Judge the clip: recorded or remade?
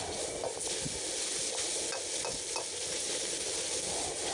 recorded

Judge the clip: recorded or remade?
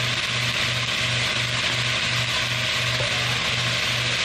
recorded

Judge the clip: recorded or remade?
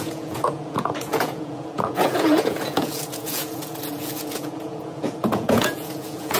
remade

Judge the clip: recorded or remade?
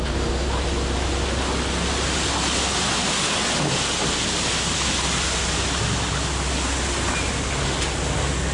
recorded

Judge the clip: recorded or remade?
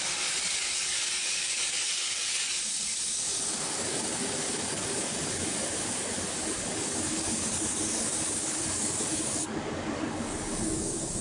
remade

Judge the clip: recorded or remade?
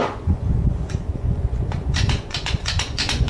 remade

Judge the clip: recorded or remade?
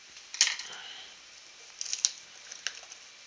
recorded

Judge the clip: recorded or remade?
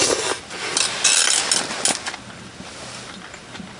recorded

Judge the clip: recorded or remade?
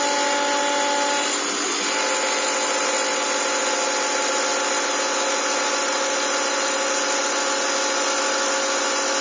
recorded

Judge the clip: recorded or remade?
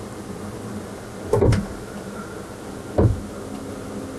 recorded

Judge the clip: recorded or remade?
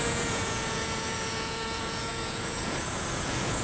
remade